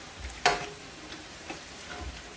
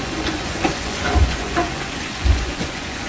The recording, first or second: first